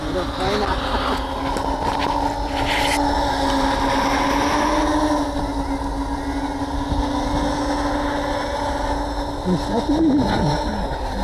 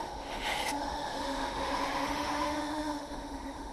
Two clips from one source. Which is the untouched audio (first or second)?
first